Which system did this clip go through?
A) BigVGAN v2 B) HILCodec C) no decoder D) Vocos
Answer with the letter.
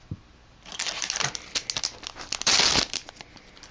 C